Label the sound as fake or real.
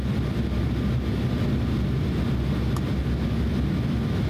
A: real